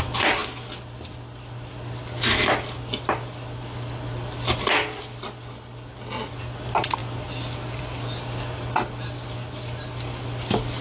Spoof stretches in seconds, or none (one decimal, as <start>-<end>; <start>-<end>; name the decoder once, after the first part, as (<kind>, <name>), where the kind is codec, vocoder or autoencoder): none